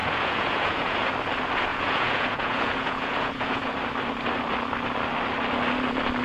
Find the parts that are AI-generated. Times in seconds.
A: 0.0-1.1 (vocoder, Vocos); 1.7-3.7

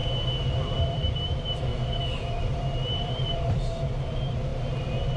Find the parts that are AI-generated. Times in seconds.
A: 0.5-1.7 (vocoder, BigVGAN v2); 2.4-4.5